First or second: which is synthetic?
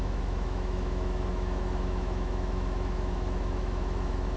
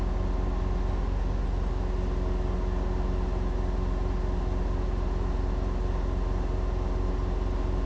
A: first